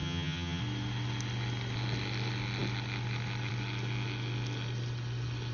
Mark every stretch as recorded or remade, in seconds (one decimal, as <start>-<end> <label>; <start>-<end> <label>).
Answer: 0.0-0.6 remade; 0.6-5.5 recorded

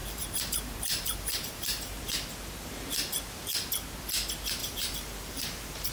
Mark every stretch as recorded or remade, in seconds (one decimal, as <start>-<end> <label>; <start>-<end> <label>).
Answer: 0.0-2.0 remade; 2.0-4.6 recorded; 4.6-5.9 remade

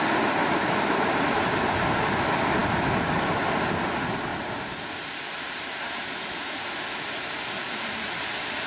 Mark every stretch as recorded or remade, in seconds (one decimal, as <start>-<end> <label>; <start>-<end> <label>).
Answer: 0.0-0.4 recorded; 0.4-2.1 remade; 2.1-4.3 recorded; 4.3-8.2 remade; 8.2-8.7 recorded

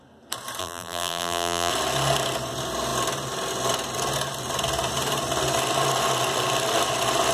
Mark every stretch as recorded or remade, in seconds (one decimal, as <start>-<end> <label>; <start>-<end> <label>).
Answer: 0.0-0.6 recorded; 0.6-1.7 remade; 1.7-7.3 recorded

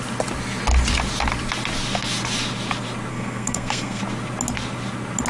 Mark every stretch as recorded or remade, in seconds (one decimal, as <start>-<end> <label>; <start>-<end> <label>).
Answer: 0.0-3.1 recorded; 3.1-4.0 remade; 4.0-5.3 recorded

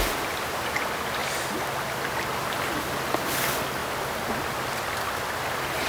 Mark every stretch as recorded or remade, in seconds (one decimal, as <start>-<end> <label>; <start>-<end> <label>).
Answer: 0.0-5.9 recorded

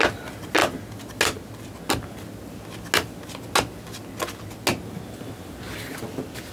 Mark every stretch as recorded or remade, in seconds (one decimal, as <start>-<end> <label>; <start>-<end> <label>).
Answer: 0.0-6.5 recorded

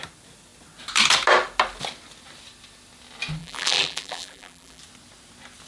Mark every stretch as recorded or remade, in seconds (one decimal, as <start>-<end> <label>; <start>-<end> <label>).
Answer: 0.0-3.4 recorded; 3.4-4.8 remade; 4.8-5.7 recorded